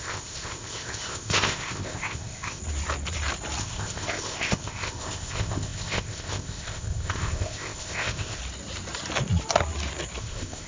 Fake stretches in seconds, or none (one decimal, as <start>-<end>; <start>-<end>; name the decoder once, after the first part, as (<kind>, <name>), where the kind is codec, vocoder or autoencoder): 0.0-2.6 (codec, ZipCodec); 3.6-8.4; 10.2-10.7

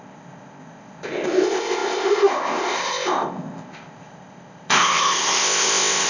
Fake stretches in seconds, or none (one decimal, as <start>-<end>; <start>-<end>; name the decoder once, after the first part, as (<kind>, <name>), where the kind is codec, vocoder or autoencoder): 0.0-6.1 (codec, ZipCodec)

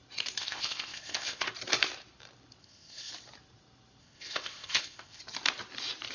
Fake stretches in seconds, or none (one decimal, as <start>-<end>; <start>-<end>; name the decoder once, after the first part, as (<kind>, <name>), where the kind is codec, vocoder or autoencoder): 0.4-1.5 (codec, ZipCodec); 2.6-3.1; 4.0-5.2